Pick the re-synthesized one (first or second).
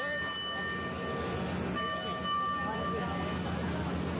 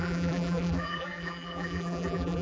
second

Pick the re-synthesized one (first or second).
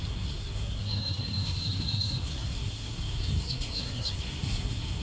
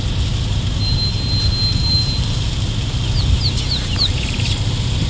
first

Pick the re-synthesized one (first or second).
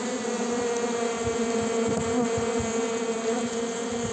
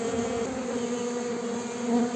second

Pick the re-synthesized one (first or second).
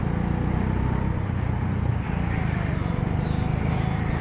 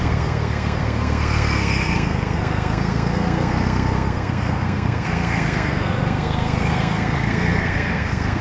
second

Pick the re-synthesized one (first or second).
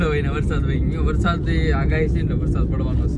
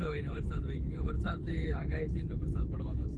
second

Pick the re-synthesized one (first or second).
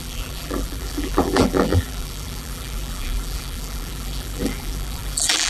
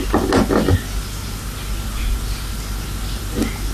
first